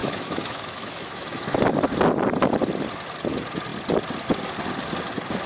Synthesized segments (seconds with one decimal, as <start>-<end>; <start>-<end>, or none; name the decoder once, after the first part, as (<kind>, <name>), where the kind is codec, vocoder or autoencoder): 0.0-1.6 (autoencoder, DAC-VAE)